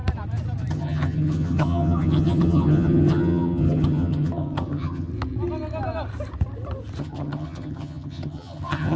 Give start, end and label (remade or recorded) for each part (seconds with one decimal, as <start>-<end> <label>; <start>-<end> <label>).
0.0-0.7 recorded; 0.7-5.1 remade; 5.1-7.0 recorded; 7.0-9.0 remade